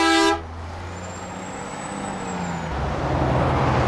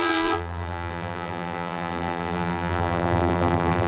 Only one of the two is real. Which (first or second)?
first